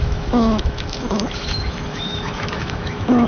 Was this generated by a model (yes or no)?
yes